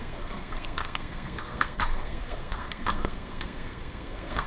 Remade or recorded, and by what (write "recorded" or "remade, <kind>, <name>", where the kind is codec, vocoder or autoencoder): remade, codec, SNAC